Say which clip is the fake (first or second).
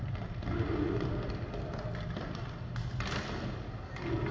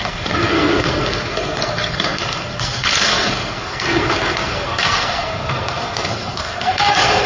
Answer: second